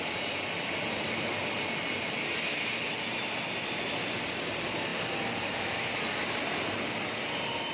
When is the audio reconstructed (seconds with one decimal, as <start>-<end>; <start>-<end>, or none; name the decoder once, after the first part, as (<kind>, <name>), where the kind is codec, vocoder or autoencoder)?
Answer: 0.0-7.7 (vocoder, BigVGAN v2)